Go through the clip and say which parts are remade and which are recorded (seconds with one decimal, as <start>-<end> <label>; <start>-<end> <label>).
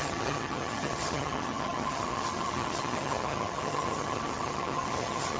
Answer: 0.0-5.4 remade